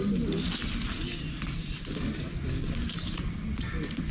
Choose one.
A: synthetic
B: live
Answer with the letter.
B